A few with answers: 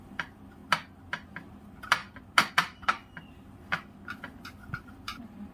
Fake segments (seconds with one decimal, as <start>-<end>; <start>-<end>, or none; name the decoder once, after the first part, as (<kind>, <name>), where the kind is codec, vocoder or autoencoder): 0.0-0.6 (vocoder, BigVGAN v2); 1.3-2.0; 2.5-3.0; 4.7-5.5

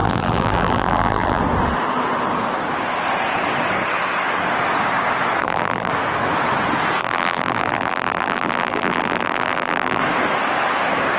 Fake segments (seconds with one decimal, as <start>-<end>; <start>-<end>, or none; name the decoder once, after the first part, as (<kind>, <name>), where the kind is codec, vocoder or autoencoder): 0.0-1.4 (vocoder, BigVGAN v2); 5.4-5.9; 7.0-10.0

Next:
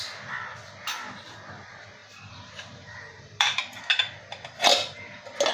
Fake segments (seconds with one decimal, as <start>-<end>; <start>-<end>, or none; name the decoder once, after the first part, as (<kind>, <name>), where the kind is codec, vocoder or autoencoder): 2.0-3.8 (vocoder, BigVGAN v2)

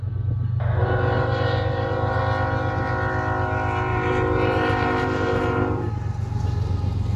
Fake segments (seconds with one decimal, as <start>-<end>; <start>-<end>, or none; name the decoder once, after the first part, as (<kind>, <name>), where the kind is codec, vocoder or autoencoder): 0.8-2.2 (vocoder, BigVGAN v2); 3.9-5.9

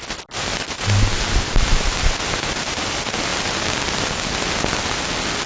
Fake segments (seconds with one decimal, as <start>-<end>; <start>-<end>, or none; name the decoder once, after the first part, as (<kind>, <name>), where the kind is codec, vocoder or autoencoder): none

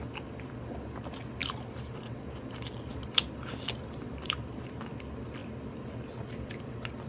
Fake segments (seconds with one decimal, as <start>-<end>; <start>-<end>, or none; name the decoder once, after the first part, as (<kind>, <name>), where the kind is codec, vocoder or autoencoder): 1.4-2.0 (vocoder, BigVGAN v2); 2.9-4.9

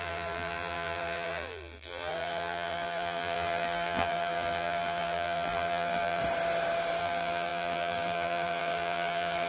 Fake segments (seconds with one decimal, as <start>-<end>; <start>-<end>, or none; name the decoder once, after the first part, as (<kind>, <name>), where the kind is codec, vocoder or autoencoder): 0.0-6.2 (vocoder, BigVGAN v2); 7.0-9.5

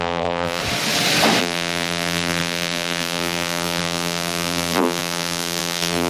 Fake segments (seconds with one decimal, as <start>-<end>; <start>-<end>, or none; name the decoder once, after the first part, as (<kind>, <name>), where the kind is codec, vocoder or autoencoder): 0.0-0.6 (vocoder, BigVGAN v2); 1.4-6.1